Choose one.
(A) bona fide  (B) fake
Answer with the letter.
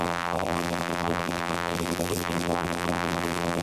B